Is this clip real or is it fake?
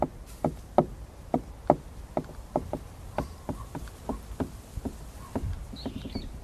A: real